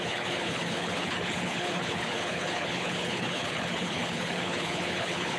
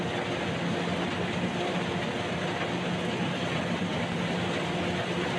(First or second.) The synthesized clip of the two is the first